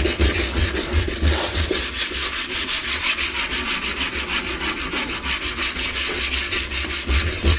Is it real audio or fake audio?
fake